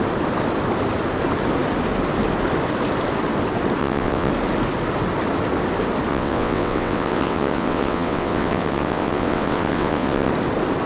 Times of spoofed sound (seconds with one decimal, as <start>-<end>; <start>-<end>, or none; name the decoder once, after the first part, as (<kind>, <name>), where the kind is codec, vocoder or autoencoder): 3.8-4.3 (vocoder, WaveNeXt); 6.1-10.3